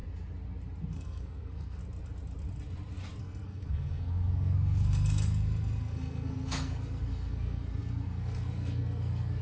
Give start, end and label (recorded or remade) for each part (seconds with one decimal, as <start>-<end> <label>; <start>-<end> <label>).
0.0-0.9 recorded; 0.9-1.8 remade; 1.8-3.2 recorded; 3.2-9.4 remade

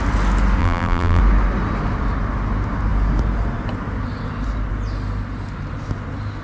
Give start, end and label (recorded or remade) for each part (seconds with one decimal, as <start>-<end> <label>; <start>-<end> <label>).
0.0-0.6 recorded; 0.6-1.2 remade; 1.2-6.4 recorded

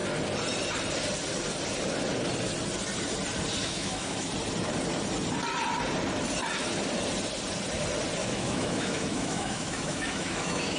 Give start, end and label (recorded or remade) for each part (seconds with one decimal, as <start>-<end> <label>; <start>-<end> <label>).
0.0-3.6 recorded; 3.6-4.3 remade; 4.3-8.2 recorded; 8.2-10.8 remade

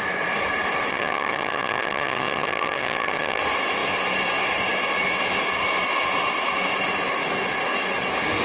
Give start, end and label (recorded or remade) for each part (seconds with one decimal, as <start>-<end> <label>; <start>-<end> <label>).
0.0-0.9 recorded; 0.9-3.4 remade; 3.4-8.4 recorded